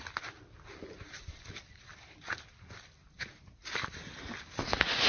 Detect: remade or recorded recorded